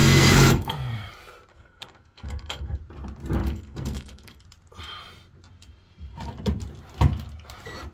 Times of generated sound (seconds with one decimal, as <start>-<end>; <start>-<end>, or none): 0.0-1.1; 1.5-2.8; 3.4-4.4